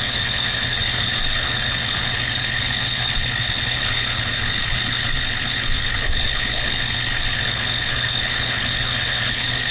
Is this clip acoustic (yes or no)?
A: no